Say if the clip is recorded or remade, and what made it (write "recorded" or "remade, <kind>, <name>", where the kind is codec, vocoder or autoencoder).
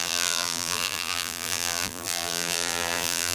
remade, vocoder, BigVGAN v2